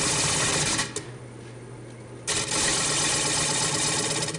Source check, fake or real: real